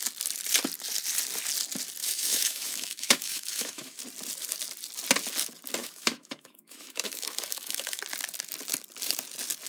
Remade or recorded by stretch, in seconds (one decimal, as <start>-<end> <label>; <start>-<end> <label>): 0.0-2.0 recorded; 2.0-4.0 remade; 4.0-5.8 recorded; 5.8-8.0 remade; 8.0-9.7 recorded